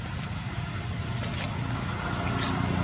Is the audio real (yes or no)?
yes